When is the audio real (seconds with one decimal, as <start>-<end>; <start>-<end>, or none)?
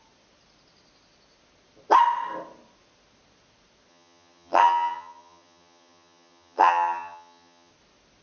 0.0-3.9; 7.7-8.2